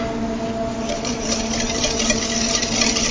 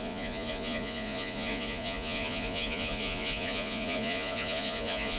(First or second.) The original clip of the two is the first